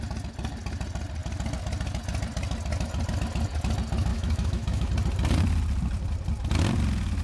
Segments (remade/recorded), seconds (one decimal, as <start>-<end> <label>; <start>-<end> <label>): 0.0-4.1 recorded; 4.1-4.9 remade; 4.9-7.2 recorded